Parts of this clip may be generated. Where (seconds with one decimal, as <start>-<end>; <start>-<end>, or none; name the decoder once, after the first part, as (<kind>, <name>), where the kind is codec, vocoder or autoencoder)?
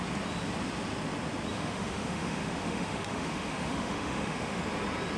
1.5-4.6 (autoencoder, DAC-VAE)